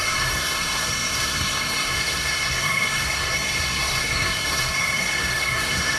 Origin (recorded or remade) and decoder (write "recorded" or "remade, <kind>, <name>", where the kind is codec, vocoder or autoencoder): remade, codec, SNAC